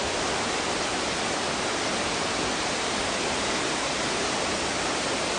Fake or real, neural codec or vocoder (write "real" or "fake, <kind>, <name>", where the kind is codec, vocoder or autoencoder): real